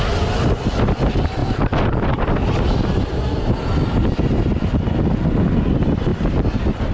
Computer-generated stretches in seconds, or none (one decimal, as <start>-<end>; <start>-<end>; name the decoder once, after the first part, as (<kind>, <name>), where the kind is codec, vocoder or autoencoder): none